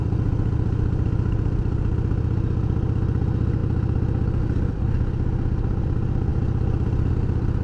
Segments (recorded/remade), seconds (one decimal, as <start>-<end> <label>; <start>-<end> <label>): 0.0-7.6 recorded